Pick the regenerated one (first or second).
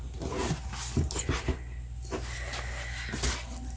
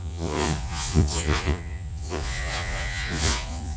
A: second